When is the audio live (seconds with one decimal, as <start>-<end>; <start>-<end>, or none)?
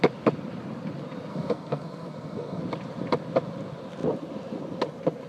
0.0-1.3; 2.6-5.3